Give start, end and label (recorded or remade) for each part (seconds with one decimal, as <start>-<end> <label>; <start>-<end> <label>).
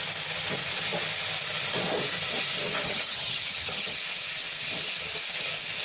0.0-2.7 recorded; 2.7-4.0 remade; 4.0-5.8 recorded